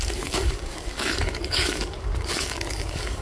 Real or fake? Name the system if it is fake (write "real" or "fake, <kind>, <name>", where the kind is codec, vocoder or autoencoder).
fake, codec, DAC